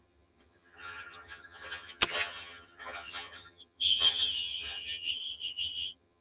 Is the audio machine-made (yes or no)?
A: yes